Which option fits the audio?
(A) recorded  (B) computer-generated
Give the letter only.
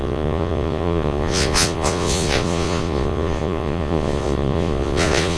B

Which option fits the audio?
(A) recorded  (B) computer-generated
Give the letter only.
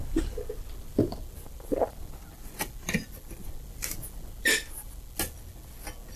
A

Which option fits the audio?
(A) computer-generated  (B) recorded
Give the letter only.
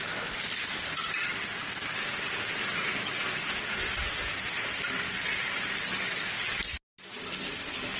B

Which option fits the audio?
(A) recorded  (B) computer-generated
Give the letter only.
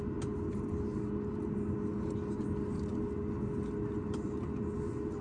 A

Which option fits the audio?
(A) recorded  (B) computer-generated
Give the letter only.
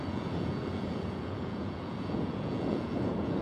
B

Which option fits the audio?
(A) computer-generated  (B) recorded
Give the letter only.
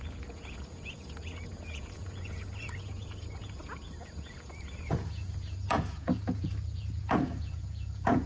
A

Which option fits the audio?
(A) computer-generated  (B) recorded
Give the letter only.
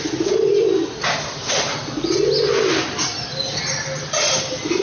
B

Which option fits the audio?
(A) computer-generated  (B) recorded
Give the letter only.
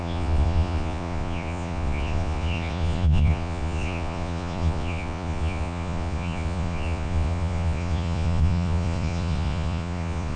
A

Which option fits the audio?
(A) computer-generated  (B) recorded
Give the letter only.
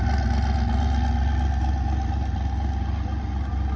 B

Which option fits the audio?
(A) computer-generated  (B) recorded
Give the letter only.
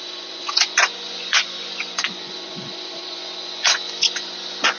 A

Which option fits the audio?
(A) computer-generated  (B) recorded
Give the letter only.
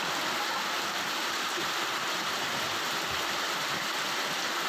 B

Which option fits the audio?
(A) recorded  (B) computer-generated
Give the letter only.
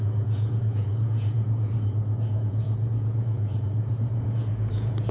B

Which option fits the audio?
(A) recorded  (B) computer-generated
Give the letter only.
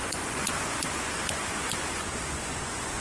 B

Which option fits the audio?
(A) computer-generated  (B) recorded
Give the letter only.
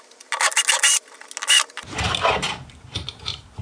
B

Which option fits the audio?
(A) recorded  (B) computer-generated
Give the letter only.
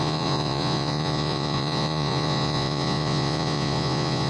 B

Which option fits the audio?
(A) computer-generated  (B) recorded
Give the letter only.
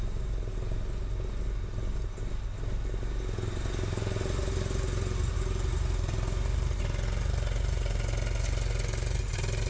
B